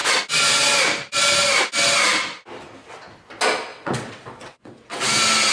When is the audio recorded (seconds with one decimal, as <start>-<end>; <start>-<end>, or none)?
0.0-3.7; 5.0-5.5